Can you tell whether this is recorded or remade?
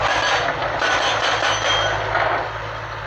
recorded